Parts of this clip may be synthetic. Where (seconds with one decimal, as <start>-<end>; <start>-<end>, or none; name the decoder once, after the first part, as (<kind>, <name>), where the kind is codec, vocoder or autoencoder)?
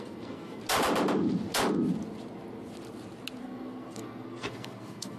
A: 0.0-0.6 (codec, SNAC); 3.4-5.2